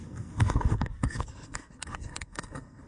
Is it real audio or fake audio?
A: fake